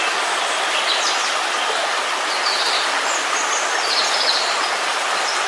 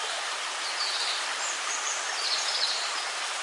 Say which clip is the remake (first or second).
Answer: second